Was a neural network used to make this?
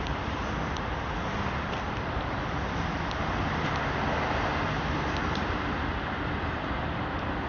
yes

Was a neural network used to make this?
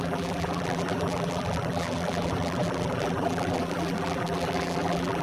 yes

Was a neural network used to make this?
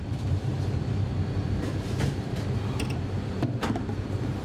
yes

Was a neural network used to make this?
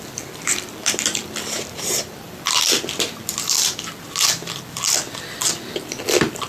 yes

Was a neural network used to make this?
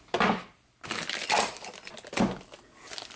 no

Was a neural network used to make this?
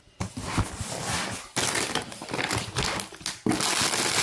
no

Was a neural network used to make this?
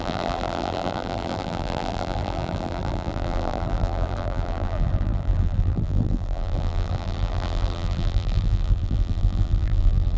yes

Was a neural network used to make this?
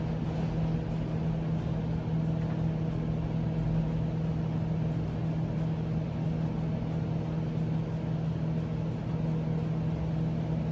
no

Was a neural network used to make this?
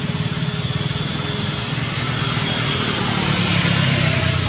no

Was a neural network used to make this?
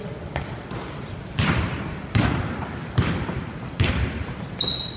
yes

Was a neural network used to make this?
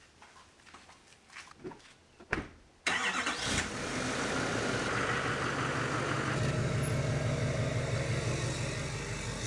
no